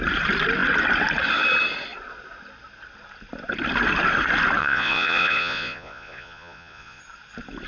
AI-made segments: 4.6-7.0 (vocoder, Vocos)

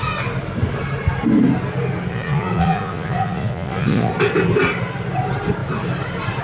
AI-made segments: 2.1-4.1 (vocoder, Vocos)

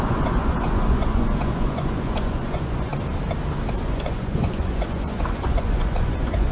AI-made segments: 0.0-2.9 (vocoder, Vocos); 3.7-6.5

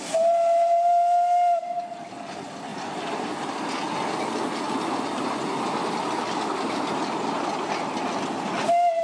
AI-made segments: none

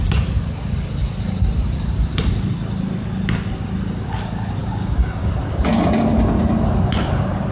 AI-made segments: 4.6-5.3 (codec, DAC)

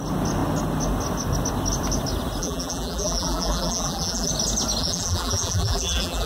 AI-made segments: 2.4-4.3 (vocoder, BigVGAN v2); 4.8-6.3

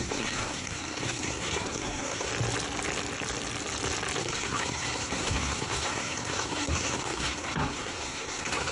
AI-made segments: 0.0-2.3 (codec, SNAC); 4.2-8.7

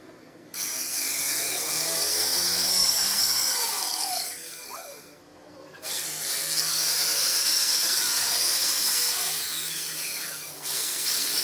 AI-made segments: 0.0-11.4 (codec, SNAC)